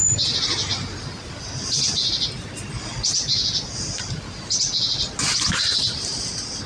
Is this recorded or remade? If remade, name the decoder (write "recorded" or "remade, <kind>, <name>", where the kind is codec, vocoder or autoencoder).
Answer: recorded